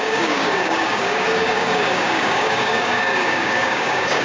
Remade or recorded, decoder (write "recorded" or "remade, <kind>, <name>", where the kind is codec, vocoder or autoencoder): remade, codec, DAC